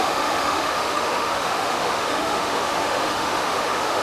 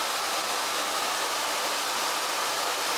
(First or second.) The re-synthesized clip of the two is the first